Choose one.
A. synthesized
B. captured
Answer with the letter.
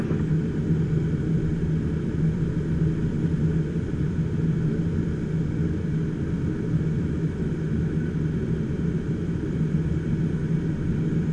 B